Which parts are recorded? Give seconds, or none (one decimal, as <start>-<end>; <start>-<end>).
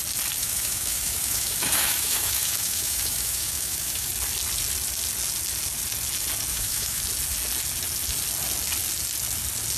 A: 0.0-0.4; 4.1-6.5; 7.0-9.8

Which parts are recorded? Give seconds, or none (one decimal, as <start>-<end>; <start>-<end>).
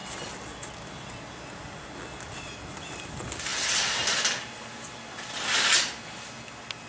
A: 0.0-6.9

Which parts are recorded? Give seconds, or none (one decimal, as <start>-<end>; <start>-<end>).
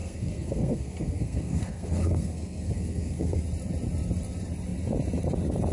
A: 3.4-5.7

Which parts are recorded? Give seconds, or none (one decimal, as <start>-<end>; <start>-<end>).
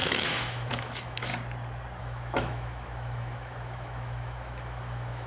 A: 1.3-2.0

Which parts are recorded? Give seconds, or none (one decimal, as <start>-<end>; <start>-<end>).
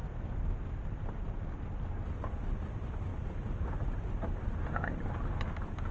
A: 0.0-5.9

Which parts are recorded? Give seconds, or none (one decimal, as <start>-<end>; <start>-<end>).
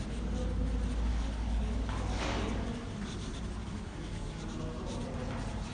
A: 0.0-1.1; 2.7-3.6; 4.3-5.7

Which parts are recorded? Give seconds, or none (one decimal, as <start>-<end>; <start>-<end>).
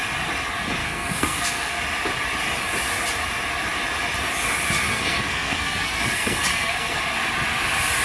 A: 0.0-0.8; 1.8-4.9; 7.0-8.0